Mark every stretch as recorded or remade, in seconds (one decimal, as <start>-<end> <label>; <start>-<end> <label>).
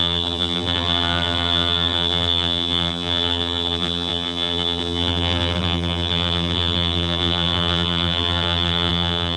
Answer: 0.0-9.4 remade